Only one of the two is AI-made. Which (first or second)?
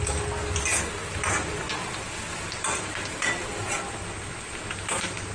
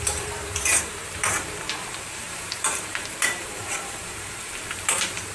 second